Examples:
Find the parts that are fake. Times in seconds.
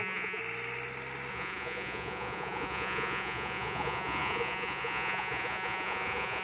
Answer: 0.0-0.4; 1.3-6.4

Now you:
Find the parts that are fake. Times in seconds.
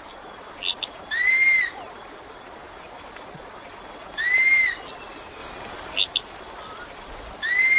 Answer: none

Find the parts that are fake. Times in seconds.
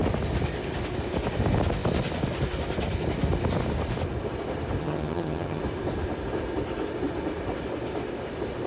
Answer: 4.8-5.6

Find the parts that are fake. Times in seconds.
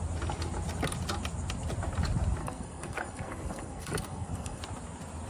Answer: 2.4-4.6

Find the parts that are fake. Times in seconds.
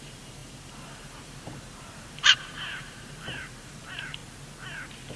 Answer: 0.0-4.2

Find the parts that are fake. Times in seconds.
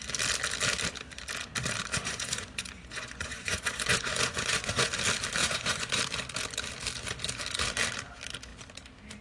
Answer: 1.9-4.9; 5.4-6.0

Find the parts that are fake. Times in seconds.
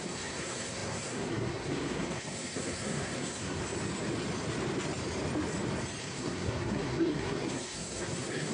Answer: 0.0-3.6; 6.0-8.5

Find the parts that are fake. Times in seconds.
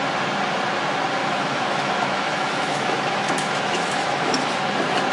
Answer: 1.2-4.3